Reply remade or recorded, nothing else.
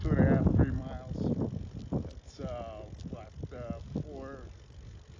recorded